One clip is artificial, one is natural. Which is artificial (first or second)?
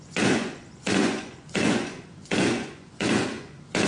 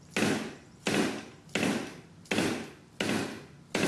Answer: first